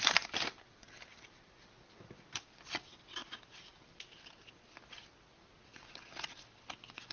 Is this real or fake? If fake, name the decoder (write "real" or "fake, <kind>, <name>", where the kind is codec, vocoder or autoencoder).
real